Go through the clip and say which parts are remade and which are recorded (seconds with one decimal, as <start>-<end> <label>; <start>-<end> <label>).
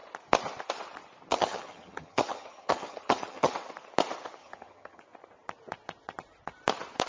0.0-1.3 recorded; 1.3-3.5 remade; 3.5-4.4 recorded; 4.4-5.0 remade; 5.0-7.1 recorded